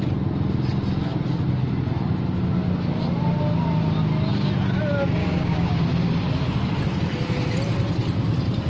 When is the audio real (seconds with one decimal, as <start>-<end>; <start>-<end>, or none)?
0.0-5.2; 5.8-8.7